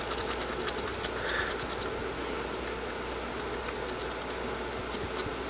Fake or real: real